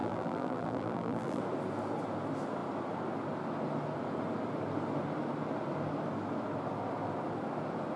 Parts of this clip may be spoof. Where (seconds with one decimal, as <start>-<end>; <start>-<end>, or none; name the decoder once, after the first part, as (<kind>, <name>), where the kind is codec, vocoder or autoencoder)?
0.0-1.4 (vocoder, BigVGAN v2)